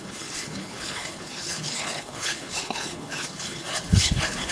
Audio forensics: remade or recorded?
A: remade